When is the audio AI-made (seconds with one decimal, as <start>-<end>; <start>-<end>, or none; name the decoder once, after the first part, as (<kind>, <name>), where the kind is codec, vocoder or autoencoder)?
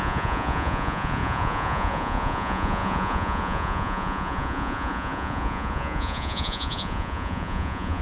0.0-8.0 (vocoder, Vocos)